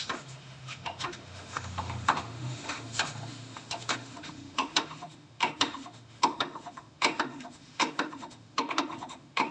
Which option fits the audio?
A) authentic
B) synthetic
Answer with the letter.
B